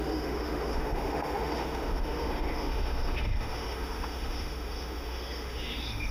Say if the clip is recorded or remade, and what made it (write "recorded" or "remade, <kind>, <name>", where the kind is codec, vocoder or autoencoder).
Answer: remade, autoencoder, DAC-VAE